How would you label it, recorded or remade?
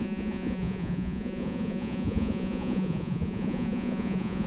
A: remade